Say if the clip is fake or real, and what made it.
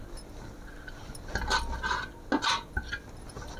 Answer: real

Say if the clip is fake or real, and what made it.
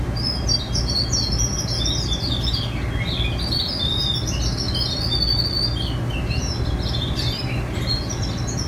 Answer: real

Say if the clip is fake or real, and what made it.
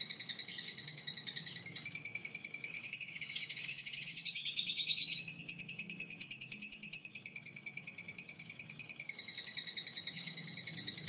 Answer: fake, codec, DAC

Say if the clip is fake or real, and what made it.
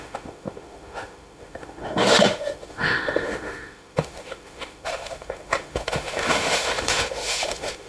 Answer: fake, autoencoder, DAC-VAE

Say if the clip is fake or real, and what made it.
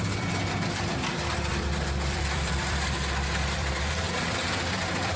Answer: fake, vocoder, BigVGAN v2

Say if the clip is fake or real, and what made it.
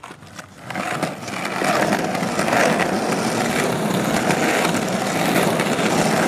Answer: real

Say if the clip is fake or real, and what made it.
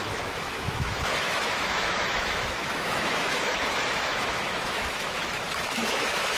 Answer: fake, autoencoder, DAC-VAE